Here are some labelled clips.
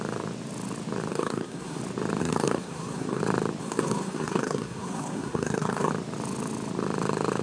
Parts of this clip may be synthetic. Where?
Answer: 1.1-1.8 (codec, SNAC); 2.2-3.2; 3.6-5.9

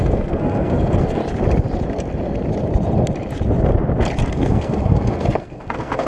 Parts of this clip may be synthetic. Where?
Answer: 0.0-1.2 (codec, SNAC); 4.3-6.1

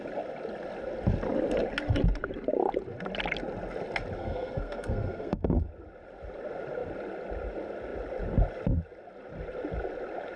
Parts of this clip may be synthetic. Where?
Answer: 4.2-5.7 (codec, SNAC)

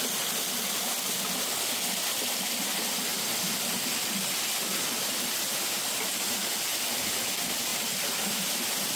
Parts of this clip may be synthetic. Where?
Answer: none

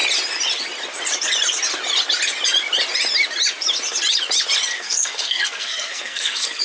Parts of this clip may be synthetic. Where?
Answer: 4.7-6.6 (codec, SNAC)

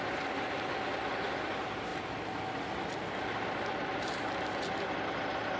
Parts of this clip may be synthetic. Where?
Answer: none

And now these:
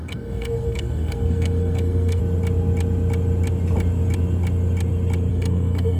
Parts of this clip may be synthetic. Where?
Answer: 0.0-2.2 (codec, SNAC); 5.3-6.0

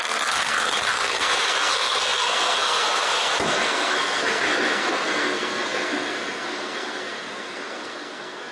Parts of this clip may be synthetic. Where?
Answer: 0.0-8.5 (codec, SNAC)